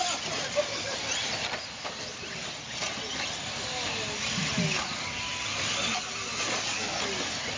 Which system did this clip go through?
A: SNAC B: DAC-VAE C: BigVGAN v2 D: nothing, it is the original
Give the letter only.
D